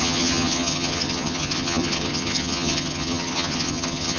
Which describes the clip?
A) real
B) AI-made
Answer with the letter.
B